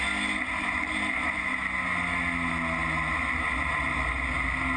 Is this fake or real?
real